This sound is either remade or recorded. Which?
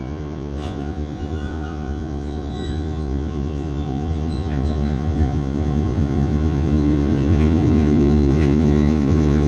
remade